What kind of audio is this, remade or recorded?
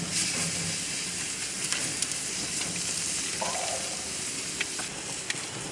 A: recorded